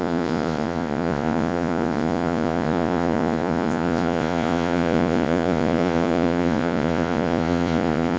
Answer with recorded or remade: remade